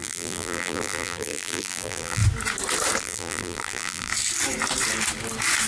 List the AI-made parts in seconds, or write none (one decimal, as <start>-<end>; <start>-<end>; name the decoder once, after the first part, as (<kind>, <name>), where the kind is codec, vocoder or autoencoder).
0.0-2.2 (vocoder, BigVGAN v2); 3.0-4.1